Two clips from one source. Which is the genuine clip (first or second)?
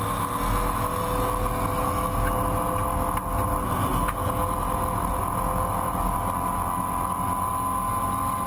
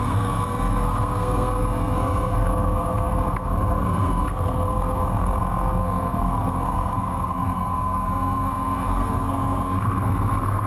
first